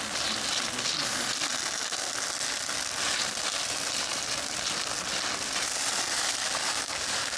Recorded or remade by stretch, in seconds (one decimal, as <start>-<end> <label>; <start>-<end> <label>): 0.0-6.6 recorded; 6.6-7.4 remade